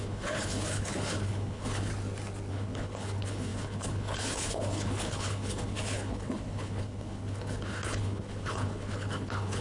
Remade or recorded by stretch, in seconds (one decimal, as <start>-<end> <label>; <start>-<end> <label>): 0.0-1.9 remade; 1.9-2.5 recorded; 2.5-9.6 remade